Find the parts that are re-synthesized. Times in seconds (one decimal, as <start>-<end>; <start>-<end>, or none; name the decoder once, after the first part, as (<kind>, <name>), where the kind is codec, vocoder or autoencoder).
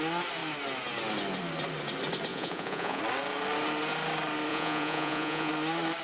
2.3-3.0 (vocoder, Vocos); 4.5-5.5